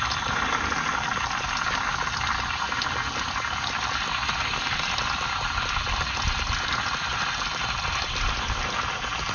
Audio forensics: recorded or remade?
recorded